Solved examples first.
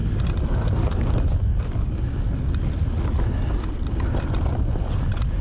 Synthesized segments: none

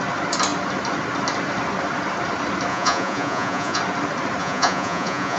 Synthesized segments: 2.7-3.8 (vocoder, Vocos); 4.4-5.4

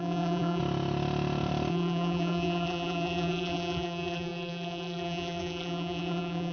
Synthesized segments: 0.0-0.6 (vocoder, BigVGAN v2); 1.7-6.5

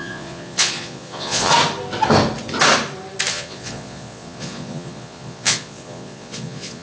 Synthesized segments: 0.0-1.5 (vocoder, Vocos); 3.3-6.8

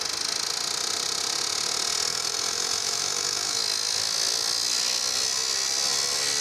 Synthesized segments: 2.1-3.6 (autoencoder, DAC-VAE)

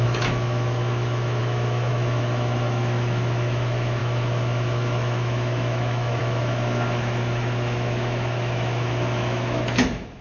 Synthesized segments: 0.0-10.2 (autoencoder, DAC-VAE)

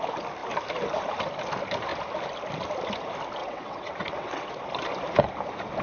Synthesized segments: 3.4-4.6 (vocoder, WaveNeXt)

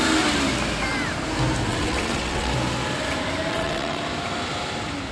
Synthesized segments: 1.7-2.5 (vocoder, WaveNeXt); 3.5-4.0